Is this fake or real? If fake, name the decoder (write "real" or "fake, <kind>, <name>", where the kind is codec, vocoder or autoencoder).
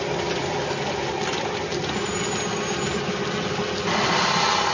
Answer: real